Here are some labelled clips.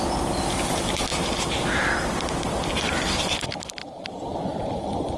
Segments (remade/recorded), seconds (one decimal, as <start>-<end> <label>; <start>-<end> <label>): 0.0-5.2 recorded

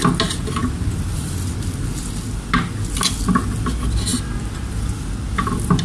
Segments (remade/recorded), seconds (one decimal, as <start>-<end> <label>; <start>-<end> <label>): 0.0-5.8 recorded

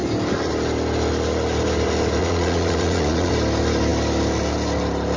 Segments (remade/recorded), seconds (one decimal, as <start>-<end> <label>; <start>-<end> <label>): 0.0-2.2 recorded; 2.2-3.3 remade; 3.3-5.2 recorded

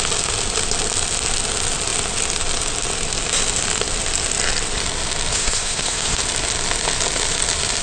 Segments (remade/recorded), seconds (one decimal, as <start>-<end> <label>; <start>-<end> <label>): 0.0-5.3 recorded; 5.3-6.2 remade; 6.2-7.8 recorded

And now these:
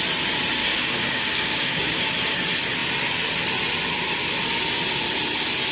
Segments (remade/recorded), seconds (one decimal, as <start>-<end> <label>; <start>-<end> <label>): 0.0-0.6 recorded; 0.6-2.1 remade; 2.1-5.7 recorded